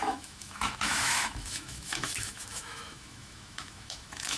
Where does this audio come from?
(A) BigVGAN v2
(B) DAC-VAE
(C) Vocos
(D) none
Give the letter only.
B